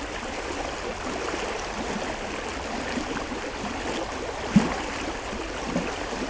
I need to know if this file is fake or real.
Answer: real